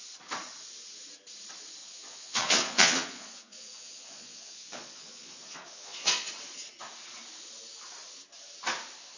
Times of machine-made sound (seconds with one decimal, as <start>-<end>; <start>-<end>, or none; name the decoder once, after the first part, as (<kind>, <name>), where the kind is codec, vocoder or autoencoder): 1.8-6.3 (vocoder, Vocos)